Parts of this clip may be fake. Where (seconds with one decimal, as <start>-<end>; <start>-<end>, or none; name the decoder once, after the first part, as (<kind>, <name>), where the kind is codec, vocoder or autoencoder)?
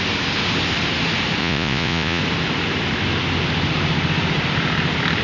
1.4-2.2 (vocoder, Vocos)